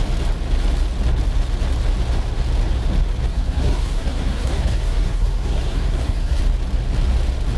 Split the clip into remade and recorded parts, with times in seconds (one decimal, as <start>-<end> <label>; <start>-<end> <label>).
0.0-3.3 recorded; 3.3-6.4 remade; 6.4-7.6 recorded